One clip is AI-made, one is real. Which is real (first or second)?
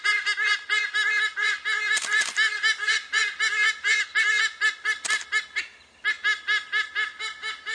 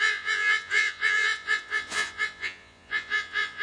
first